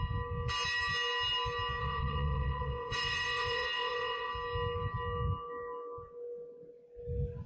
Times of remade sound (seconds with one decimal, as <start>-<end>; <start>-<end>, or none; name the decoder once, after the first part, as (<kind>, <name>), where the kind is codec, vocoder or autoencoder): 1.8-4.3 (vocoder, WaveNeXt)